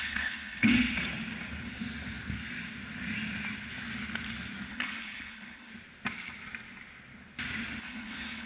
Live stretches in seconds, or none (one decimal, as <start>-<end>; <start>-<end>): 0.7-4.7; 5.7-7.8